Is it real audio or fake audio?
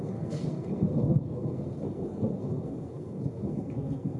fake